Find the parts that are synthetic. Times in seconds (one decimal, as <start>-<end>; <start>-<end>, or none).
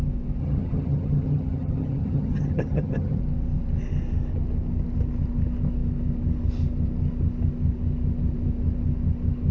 0.4-3.2